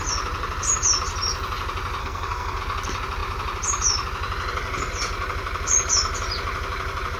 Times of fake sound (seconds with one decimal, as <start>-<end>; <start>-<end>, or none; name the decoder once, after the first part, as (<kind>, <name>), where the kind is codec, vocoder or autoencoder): 2.0-2.6 (codec, SNAC)